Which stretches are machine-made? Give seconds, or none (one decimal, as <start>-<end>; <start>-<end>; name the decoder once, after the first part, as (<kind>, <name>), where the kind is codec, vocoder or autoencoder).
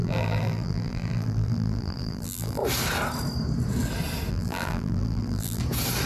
0.0-2.6 (vocoder, BigVGAN v2); 4.3-5.6